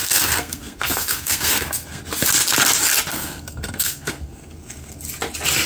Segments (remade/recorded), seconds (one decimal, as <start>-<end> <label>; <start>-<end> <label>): 0.0-2.0 remade; 2.0-3.1 recorded; 3.1-5.0 remade; 5.0-5.7 recorded